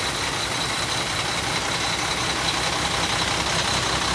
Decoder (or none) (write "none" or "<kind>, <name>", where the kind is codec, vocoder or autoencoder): none